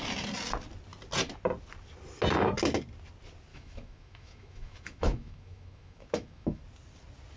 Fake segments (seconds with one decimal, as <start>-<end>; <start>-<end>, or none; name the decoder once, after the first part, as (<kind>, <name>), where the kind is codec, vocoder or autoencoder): 3.5-6.6 (autoencoder, DAC-VAE)